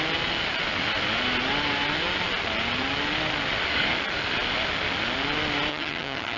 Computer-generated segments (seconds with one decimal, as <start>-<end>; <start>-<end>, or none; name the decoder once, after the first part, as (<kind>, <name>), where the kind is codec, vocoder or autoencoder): 5.7-6.4 (vocoder, HiFi-GAN)